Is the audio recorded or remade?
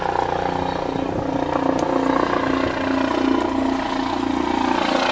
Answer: recorded